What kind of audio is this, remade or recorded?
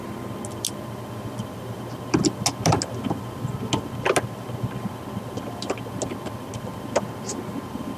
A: recorded